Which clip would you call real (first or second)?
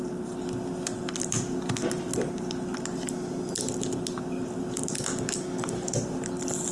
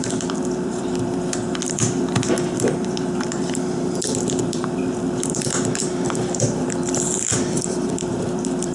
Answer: first